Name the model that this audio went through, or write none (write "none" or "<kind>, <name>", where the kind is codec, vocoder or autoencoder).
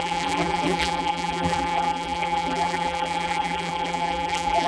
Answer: vocoder, BigVGAN v2